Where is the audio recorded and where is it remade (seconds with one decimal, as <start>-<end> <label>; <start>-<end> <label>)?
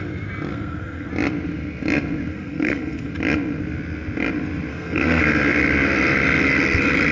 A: 0.0-0.5 recorded; 0.5-1.1 remade; 1.1-2.3 recorded; 2.3-3.1 remade; 3.1-4.7 recorded; 4.7-5.2 remade; 5.2-7.1 recorded